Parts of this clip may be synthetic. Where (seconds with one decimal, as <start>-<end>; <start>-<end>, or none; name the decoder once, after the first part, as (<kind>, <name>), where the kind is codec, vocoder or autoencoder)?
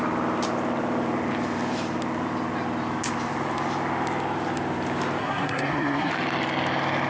5.2-6.1 (codec, SNAC)